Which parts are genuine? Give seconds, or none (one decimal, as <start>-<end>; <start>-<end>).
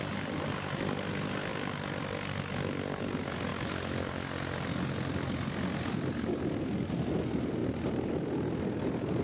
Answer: 0.0-9.2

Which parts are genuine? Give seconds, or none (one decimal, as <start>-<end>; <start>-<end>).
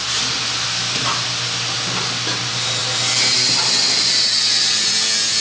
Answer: 0.0-5.4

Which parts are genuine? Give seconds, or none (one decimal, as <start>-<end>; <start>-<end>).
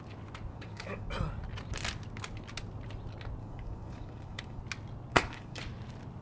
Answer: 0.0-0.5; 1.1-3.4; 4.6-5.1; 5.6-6.2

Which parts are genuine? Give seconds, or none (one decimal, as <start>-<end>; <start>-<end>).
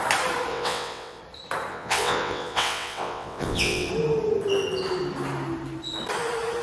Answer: 0.0-0.5; 1.2-1.7; 3.9-6.6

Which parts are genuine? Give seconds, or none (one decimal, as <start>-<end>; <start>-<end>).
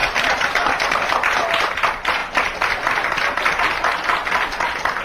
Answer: 1.1-5.0